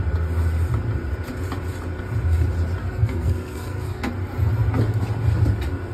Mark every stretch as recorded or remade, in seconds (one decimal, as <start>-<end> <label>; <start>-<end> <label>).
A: 0.0-2.8 recorded; 2.8-4.1 remade; 4.1-5.9 recorded